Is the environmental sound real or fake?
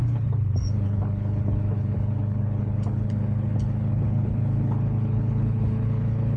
fake